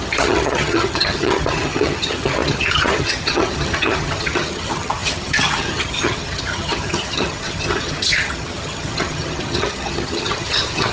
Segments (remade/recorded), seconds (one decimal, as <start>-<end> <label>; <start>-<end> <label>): 0.0-10.9 remade